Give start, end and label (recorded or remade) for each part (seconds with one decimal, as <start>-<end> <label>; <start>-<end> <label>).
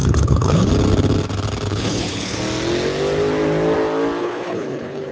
0.0-0.7 remade; 0.7-1.7 recorded; 1.7-2.4 remade; 2.4-4.2 recorded; 4.2-5.1 remade